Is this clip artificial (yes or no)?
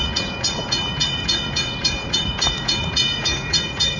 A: yes